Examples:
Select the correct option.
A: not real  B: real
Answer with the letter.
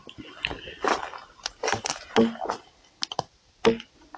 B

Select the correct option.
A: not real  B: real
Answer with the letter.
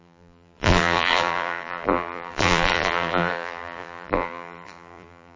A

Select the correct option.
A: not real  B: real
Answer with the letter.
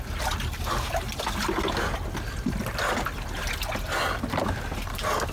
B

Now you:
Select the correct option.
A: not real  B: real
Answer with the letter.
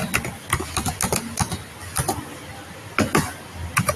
B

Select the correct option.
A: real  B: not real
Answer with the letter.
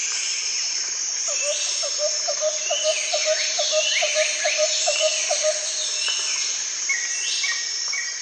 B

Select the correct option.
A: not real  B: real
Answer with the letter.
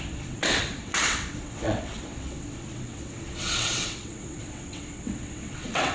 A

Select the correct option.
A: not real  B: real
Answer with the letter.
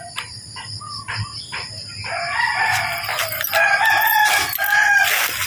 B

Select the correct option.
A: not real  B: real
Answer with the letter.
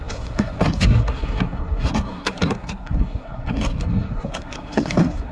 A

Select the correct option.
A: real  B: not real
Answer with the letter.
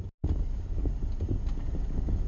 A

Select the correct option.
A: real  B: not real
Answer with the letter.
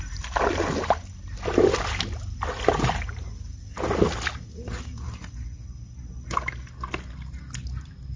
A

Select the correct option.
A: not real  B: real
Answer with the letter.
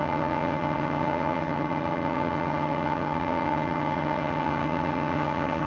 A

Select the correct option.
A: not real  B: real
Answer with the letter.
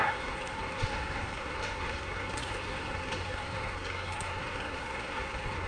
A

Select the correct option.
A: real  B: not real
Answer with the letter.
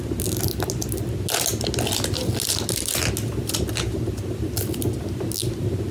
A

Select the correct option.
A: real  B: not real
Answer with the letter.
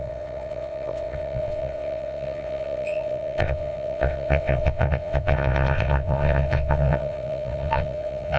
B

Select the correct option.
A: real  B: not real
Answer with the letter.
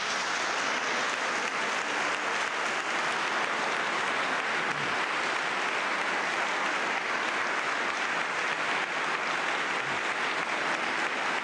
A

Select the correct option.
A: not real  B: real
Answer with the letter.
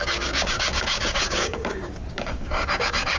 A